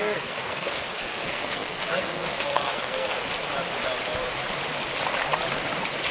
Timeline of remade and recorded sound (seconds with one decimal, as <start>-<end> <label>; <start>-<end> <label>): 0.0-3.2 remade; 3.2-6.1 recorded